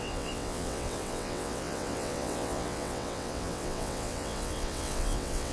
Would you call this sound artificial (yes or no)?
yes